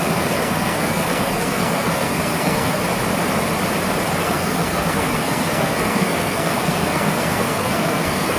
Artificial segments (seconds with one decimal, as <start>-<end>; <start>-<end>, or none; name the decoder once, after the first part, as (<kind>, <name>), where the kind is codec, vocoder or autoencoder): 0.0-2.8 (codec, SNAC); 4.2-8.4